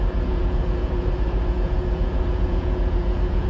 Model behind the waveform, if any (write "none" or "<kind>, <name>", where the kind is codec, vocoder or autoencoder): vocoder, Vocos